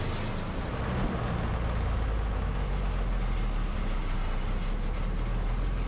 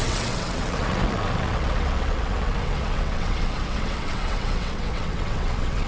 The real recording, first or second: first